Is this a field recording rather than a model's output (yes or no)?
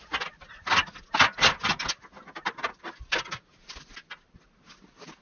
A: yes